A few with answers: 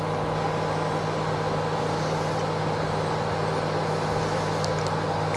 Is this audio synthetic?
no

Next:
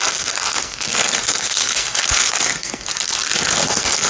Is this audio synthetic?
yes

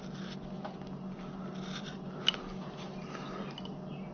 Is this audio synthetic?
no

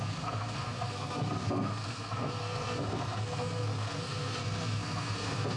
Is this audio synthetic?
yes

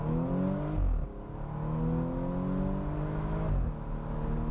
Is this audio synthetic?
no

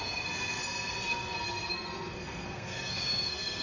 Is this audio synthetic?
yes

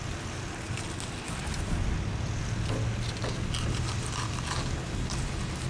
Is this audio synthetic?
no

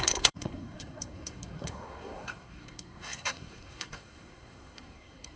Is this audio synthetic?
yes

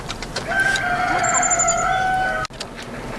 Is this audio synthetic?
no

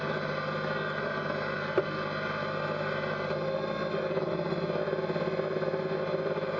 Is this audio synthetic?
no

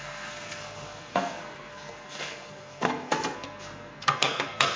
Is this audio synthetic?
yes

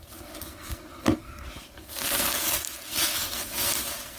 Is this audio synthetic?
yes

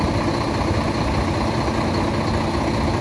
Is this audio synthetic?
no